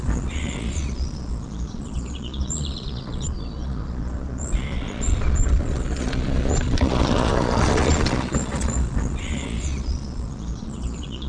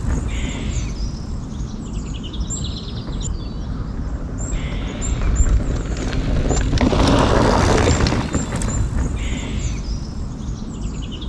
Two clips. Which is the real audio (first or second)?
second